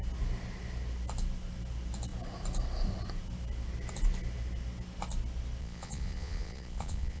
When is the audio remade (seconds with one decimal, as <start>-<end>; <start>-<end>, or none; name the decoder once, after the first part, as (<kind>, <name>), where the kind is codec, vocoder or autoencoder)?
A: 5.6-7.2 (vocoder, Vocos)